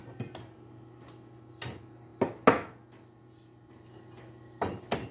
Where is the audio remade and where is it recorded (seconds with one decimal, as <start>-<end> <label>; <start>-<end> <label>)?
0.0-5.1 recorded